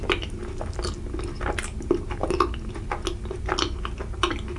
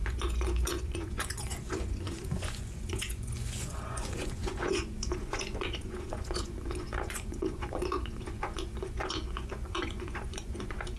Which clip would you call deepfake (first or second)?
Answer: second